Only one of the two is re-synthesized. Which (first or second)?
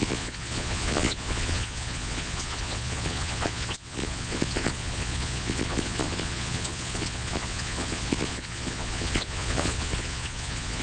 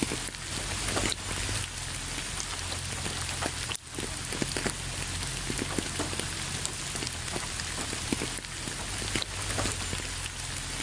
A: first